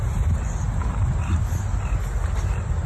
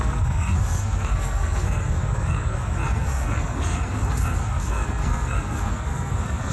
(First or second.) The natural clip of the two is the first